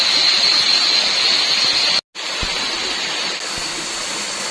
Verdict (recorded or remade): recorded